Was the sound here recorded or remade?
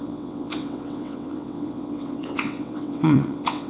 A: remade